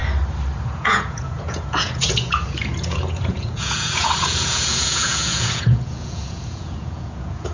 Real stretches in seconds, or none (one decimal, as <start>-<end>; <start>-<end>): 0.0-0.6